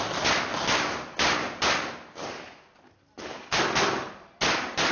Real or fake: real